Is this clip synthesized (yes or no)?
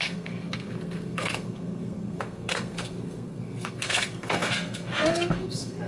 yes